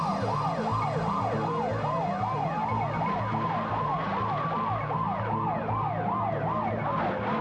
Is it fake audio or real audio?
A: real